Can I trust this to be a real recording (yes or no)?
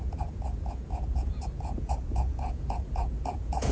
no